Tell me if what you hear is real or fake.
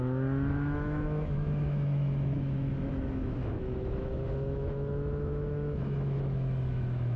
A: fake